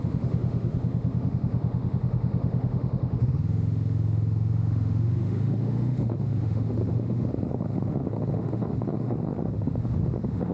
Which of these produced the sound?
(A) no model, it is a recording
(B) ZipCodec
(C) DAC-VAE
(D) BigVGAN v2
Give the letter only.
C